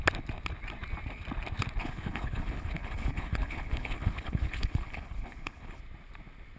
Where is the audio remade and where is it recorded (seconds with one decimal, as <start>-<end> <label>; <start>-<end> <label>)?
0.0-1.8 recorded; 1.8-5.8 remade; 5.8-6.6 recorded